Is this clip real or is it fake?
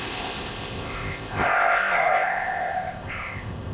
fake